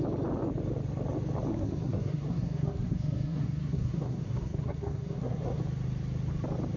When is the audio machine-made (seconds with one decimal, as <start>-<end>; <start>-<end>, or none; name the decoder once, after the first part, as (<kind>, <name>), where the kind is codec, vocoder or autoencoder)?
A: 1.5-5.6 (codec, SNAC)